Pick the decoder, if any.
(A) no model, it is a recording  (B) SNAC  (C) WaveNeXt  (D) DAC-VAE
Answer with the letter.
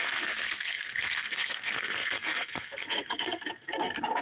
B